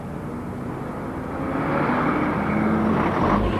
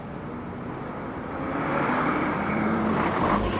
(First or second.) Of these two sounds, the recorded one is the first